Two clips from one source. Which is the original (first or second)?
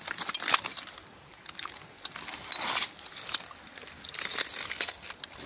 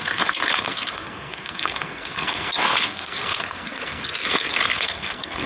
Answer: first